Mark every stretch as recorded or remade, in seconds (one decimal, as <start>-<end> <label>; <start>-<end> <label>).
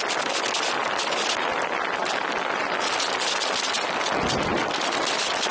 0.0-5.5 recorded